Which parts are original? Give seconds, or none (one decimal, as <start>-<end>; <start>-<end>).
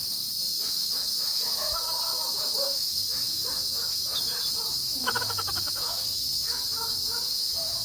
none